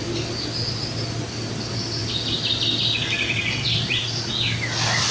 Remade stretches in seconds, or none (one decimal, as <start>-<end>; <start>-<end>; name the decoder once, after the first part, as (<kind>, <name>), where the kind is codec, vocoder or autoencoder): none